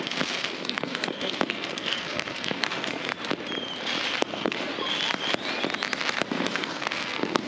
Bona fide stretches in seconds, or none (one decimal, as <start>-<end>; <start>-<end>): 3.1-4.2; 4.7-6.3